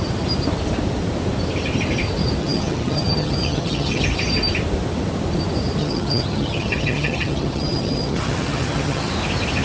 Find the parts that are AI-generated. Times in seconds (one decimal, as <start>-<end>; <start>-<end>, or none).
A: 2.4-4.0; 5.8-9.1

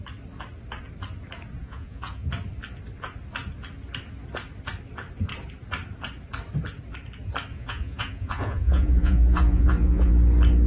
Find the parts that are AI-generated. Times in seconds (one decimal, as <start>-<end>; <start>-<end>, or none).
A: 1.6-2.3; 7.5-10.1

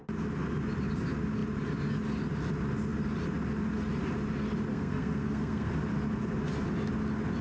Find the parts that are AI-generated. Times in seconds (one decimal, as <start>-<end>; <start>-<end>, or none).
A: 4.7-5.7

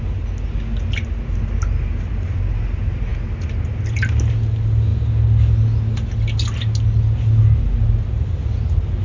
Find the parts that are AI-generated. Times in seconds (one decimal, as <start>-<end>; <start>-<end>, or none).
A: none

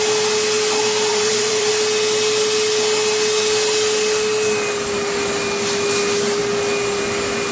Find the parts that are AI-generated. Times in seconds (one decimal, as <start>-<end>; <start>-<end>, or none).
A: 1.1-1.7

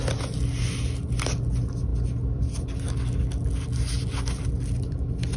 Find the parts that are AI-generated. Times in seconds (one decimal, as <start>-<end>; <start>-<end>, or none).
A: none